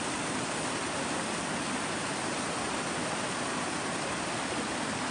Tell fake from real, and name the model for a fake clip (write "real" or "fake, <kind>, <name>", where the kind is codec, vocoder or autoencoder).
real